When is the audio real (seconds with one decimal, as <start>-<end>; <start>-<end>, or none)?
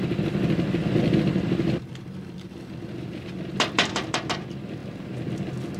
0.0-0.8; 4.3-5.8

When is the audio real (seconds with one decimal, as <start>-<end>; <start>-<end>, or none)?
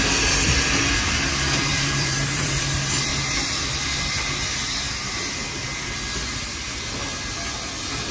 0.0-1.7; 2.6-8.1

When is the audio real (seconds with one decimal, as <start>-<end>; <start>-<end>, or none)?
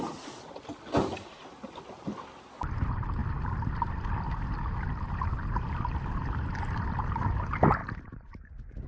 0.0-7.8; 8.5-8.9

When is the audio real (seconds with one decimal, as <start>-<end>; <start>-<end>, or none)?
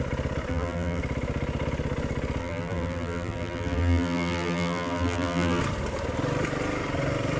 0.0-0.5; 1.0-2.4; 5.6-7.4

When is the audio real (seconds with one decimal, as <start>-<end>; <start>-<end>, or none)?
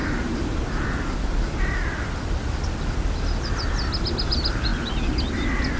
0.0-5.8